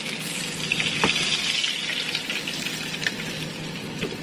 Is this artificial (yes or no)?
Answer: no